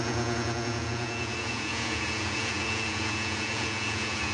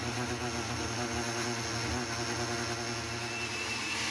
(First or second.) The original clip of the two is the second